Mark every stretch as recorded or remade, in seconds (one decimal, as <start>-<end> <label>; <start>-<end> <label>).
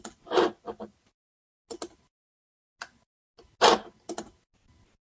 0.0-5.1 recorded